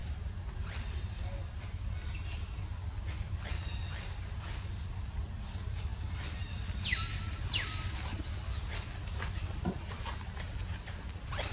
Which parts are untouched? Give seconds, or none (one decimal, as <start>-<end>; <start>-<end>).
0.0-11.5